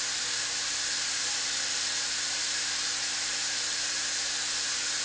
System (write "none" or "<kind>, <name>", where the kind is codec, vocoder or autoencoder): vocoder, BigVGAN v2